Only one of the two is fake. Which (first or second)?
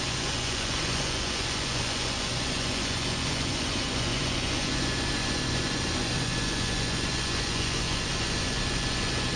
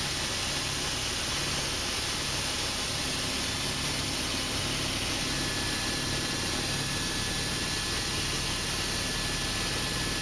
first